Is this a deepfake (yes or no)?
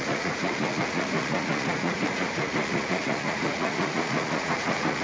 yes